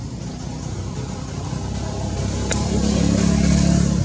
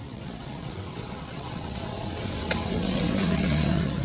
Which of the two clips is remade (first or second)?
second